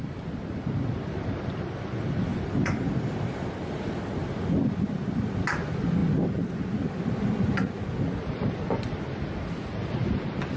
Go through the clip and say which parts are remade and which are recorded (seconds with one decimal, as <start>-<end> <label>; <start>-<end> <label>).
0.0-2.3 recorded; 2.3-3.5 remade; 3.5-10.6 recorded